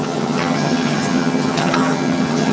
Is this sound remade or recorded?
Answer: remade